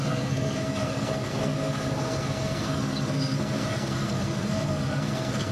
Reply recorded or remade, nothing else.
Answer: remade